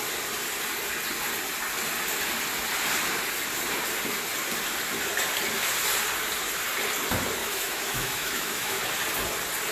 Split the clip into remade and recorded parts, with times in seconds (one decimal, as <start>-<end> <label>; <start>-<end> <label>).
0.0-7.4 recorded; 7.4-8.8 remade; 8.8-9.7 recorded